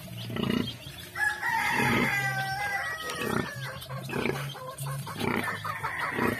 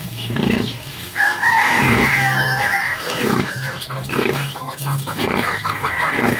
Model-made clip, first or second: second